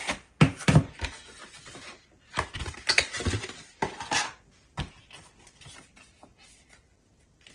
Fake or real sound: real